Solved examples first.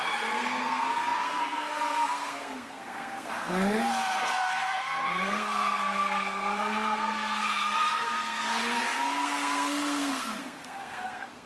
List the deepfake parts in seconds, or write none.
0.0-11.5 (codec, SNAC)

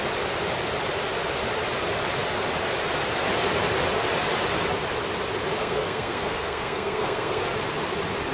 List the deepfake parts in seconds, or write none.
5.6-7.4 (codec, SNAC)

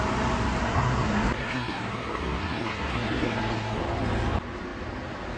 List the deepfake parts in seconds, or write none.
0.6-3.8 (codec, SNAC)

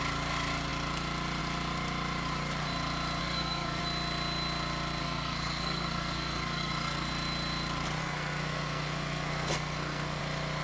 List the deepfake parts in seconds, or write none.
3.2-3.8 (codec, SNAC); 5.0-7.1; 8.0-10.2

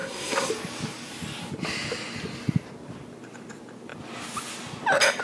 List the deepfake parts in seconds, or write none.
0.0-0.5 (codec, SNAC)

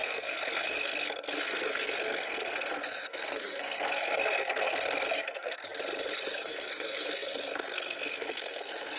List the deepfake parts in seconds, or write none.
0.0-5.6 (codec, SNAC); 6.1-9.0